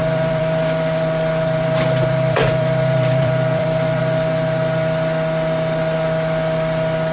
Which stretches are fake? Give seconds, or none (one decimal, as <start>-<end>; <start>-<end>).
0.0-4.0